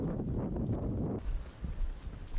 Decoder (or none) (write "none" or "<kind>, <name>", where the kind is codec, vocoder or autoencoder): none